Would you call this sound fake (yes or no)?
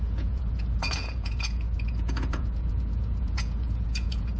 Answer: yes